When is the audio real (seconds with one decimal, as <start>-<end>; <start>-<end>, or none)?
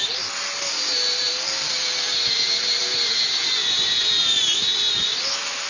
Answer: 0.0-5.7